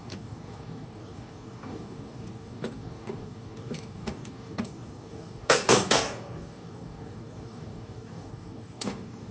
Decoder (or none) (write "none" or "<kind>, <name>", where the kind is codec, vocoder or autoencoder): codec, DAC